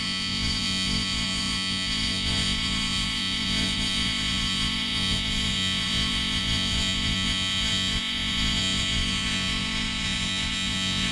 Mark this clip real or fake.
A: fake